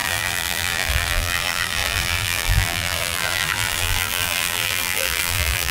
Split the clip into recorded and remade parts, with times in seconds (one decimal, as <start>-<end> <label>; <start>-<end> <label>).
0.0-5.7 remade